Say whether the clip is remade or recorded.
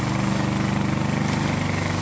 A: recorded